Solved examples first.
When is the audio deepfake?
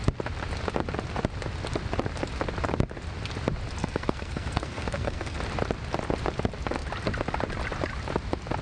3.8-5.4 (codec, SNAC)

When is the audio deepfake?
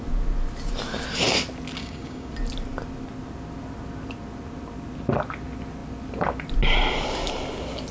1.8-2.3 (codec, DAC)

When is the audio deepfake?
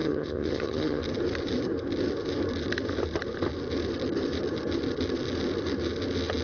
0.0-1.0 (vocoder, HiFi-GAN)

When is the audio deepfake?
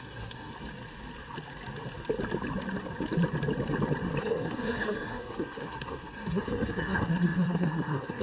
0.0-0.5 (codec, SNAC); 4.2-8.2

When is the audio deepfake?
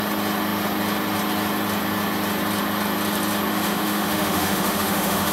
3.5-5.3 (autoencoder, DAC-VAE)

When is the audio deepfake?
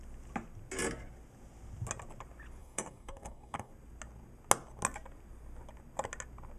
2.6-3.7 (codec, DAC)